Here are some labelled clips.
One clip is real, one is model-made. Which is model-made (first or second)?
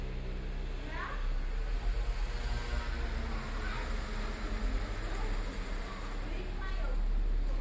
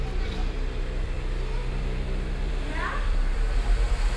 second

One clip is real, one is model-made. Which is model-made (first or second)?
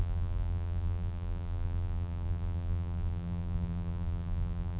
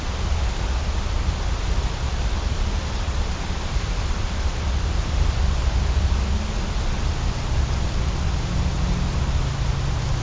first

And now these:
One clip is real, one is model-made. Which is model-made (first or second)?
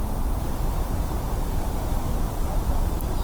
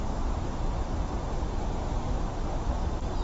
first